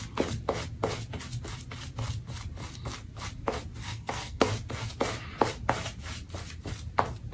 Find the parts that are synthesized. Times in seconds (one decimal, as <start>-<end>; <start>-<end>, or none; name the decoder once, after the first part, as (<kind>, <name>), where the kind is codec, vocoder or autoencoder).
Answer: 3.8-4.5 (codec, SNAC)